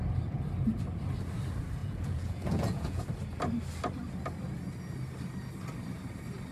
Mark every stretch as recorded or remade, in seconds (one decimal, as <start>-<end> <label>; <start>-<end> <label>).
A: 0.0-1.8 recorded; 1.8-3.0 remade; 3.0-6.5 recorded

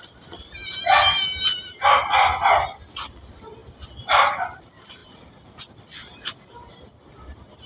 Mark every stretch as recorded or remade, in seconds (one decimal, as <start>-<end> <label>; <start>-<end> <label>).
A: 0.0-7.7 recorded

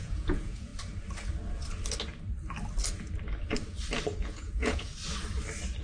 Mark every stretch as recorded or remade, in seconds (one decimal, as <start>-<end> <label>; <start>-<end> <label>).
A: 0.0-0.7 remade; 0.7-4.2 recorded; 4.2-4.9 remade; 4.9-5.8 recorded

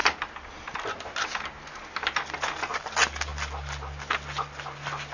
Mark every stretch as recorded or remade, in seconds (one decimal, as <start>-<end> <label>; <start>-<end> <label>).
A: 0.0-5.1 recorded

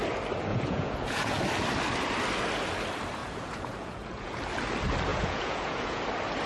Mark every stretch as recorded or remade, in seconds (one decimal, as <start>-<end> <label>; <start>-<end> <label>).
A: 0.0-0.5 recorded; 0.5-1.4 remade; 1.4-3.2 recorded; 3.2-4.4 remade; 4.4-5.1 recorded; 5.1-6.0 remade; 6.0-6.5 recorded